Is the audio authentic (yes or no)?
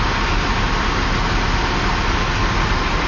yes